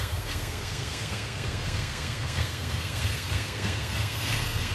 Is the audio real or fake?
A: fake